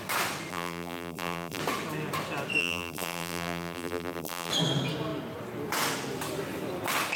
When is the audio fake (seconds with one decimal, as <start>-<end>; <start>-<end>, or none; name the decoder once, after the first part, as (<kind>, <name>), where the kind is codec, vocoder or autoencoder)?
0.5-1.6 (vocoder, BigVGAN v2); 2.6-4.5